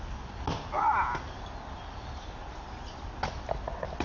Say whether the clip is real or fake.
real